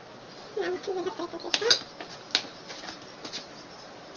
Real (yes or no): yes